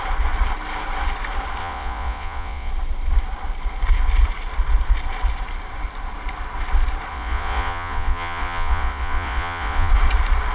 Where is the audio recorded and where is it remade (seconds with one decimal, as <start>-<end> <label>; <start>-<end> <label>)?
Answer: 0.0-1.6 recorded; 1.6-2.7 remade; 2.7-7.1 recorded; 7.1-9.9 remade; 9.9-10.5 recorded